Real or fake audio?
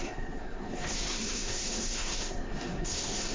fake